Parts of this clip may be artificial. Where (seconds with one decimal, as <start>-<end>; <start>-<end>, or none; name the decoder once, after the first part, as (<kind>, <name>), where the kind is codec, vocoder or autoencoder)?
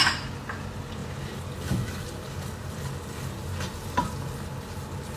none